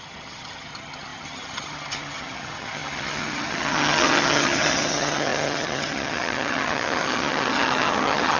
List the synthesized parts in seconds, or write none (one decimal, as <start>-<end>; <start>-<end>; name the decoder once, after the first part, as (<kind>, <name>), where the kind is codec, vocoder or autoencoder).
0.0-8.4 (vocoder, HiFi-GAN)